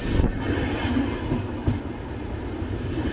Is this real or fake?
real